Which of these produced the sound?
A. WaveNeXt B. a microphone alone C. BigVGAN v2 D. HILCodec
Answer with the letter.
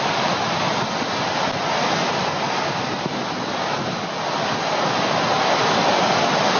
B